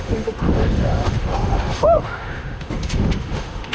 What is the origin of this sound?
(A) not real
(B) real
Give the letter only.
A